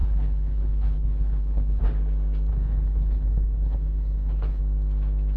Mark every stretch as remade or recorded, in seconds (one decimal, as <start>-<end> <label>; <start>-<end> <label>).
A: 0.0-1.8 remade; 1.8-2.5 recorded; 2.5-4.6 remade; 4.6-5.4 recorded

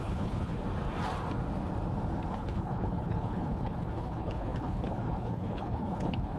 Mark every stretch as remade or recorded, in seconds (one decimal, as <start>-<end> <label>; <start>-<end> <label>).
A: 0.0-0.6 remade; 0.6-2.3 recorded; 2.3-6.4 remade

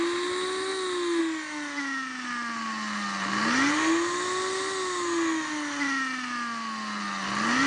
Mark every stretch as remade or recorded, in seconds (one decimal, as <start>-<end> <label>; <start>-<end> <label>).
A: 0.0-7.7 recorded

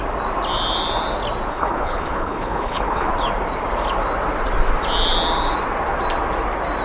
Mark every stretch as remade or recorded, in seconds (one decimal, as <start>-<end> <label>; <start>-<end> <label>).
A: 0.0-1.5 recorded; 1.5-3.1 remade; 3.1-6.8 recorded